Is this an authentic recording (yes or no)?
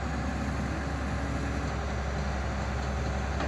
yes